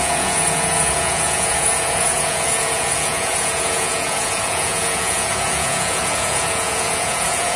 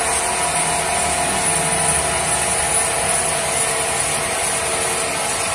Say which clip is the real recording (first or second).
second